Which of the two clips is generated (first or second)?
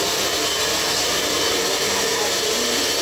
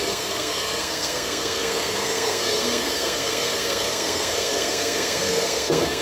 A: second